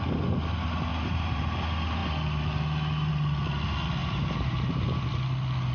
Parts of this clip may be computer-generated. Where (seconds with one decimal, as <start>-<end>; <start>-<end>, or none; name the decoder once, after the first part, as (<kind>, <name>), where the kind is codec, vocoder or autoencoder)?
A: 0.9-1.4 (vocoder, BigVGAN v2); 4.0-5.1